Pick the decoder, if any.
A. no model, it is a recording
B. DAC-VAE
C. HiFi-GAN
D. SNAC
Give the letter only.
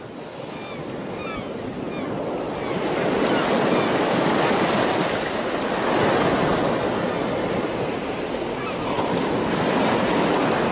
A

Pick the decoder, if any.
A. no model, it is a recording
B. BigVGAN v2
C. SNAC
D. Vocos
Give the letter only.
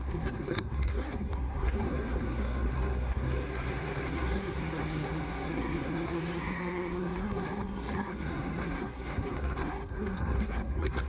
C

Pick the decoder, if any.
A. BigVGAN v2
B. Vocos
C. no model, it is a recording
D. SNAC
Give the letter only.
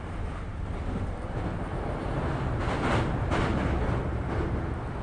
C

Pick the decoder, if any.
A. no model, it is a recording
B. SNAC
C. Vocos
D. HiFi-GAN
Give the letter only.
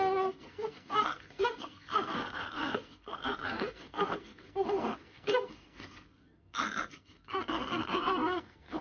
B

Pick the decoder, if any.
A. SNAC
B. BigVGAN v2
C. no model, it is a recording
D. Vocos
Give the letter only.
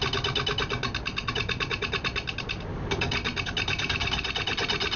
C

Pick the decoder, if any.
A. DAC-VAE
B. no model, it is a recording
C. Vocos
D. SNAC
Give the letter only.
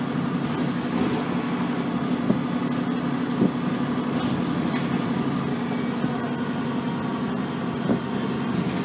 B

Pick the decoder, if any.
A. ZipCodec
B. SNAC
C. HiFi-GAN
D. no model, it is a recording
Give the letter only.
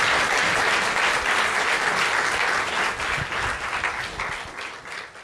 D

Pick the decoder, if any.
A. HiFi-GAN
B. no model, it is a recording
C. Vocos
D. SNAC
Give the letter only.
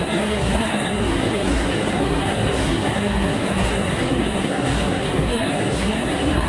D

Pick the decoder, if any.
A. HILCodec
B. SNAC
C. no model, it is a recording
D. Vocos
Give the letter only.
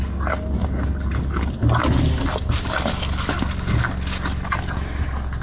C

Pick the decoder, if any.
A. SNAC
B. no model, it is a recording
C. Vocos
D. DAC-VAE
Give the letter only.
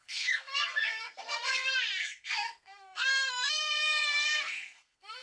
A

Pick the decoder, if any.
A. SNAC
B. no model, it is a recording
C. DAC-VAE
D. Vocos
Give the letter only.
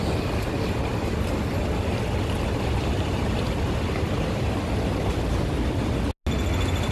B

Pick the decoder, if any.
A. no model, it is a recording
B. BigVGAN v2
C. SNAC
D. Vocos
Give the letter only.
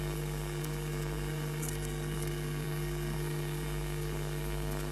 C